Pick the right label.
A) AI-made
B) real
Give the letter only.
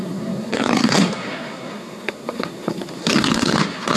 A